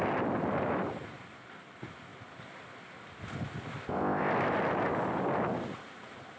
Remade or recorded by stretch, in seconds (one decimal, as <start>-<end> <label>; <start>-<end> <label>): 0.0-3.8 recorded; 3.8-4.3 remade; 4.3-6.4 recorded